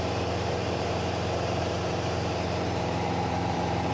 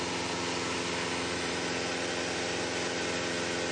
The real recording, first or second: second